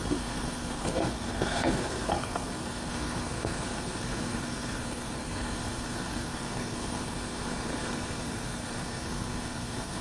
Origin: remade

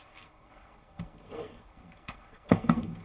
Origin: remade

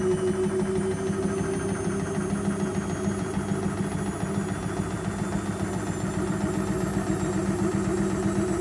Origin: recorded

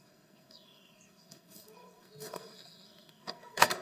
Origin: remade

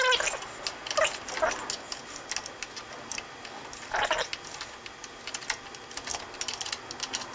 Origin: recorded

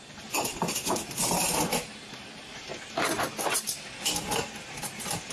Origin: recorded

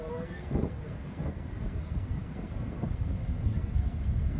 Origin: remade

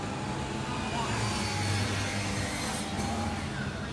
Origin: recorded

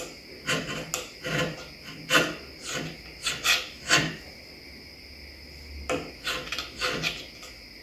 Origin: recorded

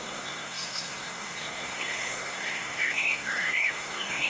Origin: remade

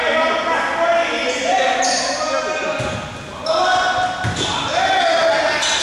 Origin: recorded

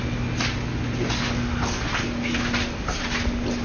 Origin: recorded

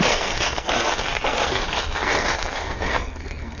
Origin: remade